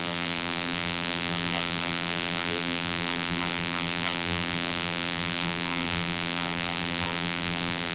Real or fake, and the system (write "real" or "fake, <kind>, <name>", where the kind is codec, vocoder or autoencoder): fake, vocoder, BigVGAN v2